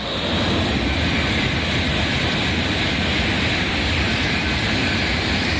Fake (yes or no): yes